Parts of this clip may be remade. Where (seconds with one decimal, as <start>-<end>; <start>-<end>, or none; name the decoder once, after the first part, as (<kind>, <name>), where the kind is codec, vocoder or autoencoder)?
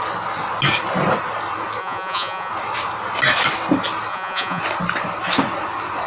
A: 1.8-2.5 (vocoder, Vocos); 4.1-4.6